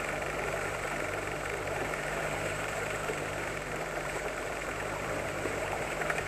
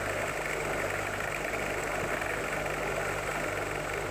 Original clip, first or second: second